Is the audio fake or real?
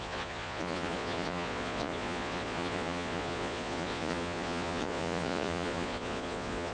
fake